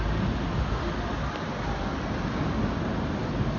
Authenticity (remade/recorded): recorded